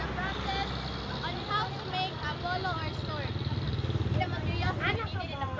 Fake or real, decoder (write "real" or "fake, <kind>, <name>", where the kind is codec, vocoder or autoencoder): real